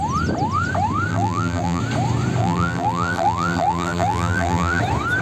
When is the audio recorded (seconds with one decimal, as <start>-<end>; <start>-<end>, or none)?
0.0-1.1; 1.8-2.4; 4.8-5.2